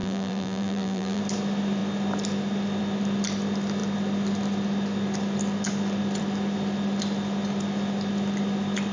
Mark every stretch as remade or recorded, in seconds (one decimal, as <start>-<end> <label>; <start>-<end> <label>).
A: 0.0-1.2 remade; 1.2-8.9 recorded